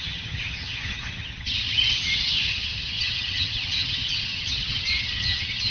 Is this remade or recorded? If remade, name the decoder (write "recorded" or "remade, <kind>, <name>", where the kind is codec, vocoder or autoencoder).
remade, vocoder, HiFi-GAN